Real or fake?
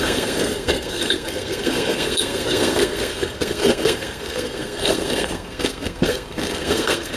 fake